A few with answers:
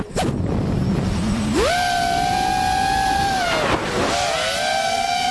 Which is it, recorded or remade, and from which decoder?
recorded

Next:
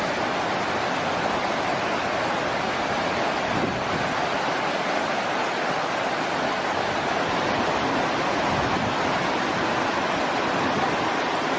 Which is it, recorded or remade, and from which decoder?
recorded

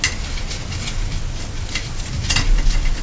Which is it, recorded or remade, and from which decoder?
recorded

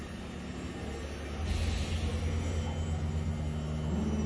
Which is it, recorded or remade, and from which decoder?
recorded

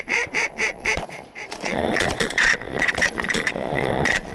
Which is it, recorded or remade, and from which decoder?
remade, vocoder, Vocos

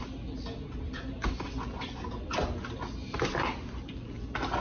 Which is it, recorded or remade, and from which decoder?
recorded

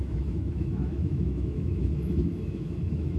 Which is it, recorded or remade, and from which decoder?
remade, autoencoder, DAC-VAE